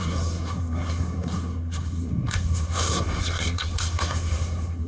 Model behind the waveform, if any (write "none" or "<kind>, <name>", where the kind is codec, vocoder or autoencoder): codec, SNAC